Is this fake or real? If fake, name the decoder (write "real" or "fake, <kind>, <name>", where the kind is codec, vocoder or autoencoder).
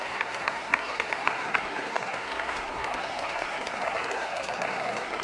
fake, codec, SNAC